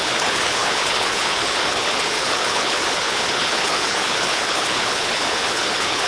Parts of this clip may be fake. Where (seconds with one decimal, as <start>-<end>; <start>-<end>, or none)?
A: 0.0-6.1